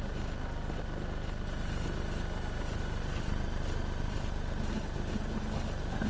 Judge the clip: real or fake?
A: fake